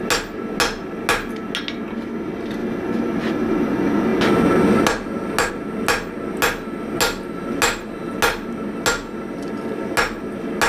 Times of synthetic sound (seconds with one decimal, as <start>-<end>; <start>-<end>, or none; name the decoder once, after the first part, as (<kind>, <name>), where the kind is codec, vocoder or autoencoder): none